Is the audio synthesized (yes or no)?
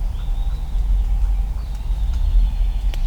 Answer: no